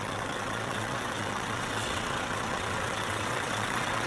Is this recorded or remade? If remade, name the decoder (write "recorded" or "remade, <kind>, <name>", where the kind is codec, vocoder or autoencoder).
remade, vocoder, WaveNeXt